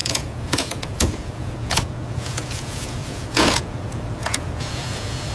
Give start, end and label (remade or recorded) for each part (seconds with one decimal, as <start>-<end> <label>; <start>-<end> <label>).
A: 0.0-5.3 remade